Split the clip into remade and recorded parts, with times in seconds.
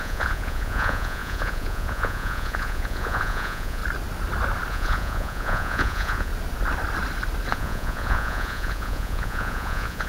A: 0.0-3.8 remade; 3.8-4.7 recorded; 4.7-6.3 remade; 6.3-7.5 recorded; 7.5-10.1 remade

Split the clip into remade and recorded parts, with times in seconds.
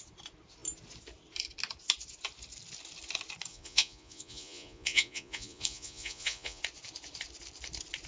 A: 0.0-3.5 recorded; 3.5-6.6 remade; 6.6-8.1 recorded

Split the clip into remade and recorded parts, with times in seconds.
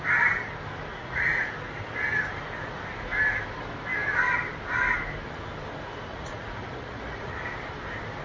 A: 0.0-0.9 recorded; 0.9-1.5 remade; 1.5-6.1 recorded; 6.1-7.3 remade; 7.3-8.2 recorded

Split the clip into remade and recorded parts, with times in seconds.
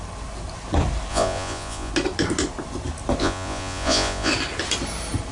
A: 0.0-1.1 recorded; 1.1-1.9 remade; 1.9-3.2 recorded; 3.2-4.3 remade; 4.3-5.3 recorded